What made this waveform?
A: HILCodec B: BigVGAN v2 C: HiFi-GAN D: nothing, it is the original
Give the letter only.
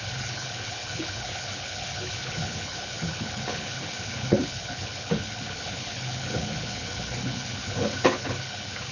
A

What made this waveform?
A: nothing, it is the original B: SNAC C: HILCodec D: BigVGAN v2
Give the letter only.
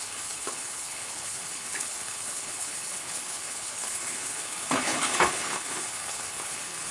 C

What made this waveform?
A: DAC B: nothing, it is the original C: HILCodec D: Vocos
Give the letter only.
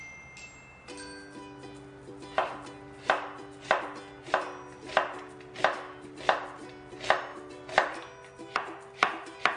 B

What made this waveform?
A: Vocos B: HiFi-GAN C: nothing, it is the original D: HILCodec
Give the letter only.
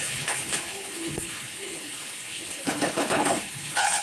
D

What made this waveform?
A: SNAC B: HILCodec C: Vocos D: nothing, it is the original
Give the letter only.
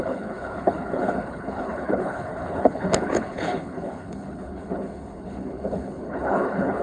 B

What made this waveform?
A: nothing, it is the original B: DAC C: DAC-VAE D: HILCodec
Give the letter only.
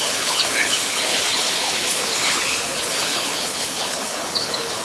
D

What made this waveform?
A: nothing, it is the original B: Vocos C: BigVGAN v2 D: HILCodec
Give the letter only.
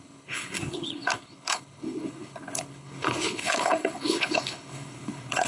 D